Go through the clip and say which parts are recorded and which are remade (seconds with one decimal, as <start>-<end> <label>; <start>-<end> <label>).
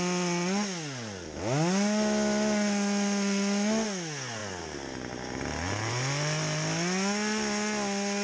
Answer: 0.0-8.2 recorded